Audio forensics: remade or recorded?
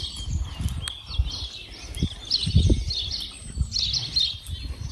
recorded